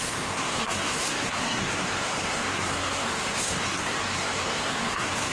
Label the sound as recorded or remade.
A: remade